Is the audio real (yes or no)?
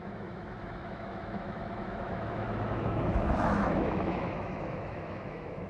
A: no